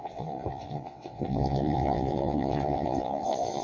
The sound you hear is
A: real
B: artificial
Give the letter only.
B